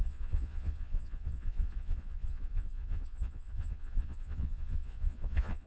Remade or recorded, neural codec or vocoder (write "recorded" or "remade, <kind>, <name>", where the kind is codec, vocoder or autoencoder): remade, vocoder, Vocos